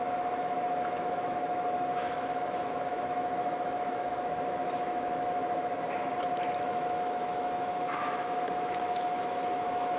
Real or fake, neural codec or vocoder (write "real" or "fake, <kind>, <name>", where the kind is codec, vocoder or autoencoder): fake, autoencoder, DAC-VAE